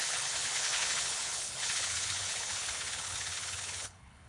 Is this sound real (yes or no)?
no